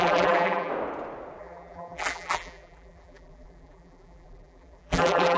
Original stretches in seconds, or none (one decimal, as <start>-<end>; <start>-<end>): 0.7-1.4